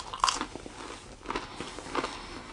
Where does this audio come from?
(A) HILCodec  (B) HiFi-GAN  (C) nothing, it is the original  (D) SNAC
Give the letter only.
C